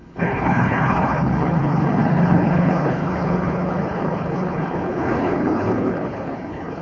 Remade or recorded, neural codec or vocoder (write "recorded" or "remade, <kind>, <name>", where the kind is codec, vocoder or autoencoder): remade, codec, HILCodec